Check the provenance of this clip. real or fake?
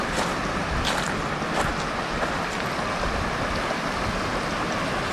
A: real